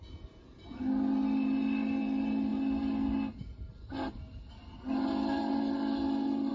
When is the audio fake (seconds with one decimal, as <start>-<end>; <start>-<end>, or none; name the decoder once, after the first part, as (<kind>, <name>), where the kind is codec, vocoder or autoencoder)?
none